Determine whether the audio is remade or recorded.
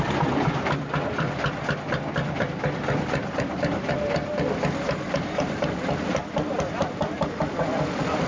remade